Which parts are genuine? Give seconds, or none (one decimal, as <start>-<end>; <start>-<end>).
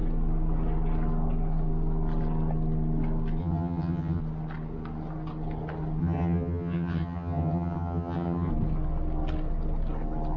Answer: 0.0-3.4; 4.2-6.0; 8.5-10.4